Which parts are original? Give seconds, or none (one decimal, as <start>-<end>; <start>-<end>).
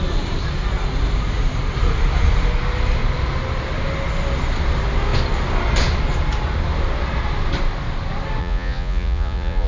0.0-8.4